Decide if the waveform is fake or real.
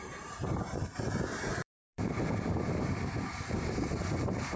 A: fake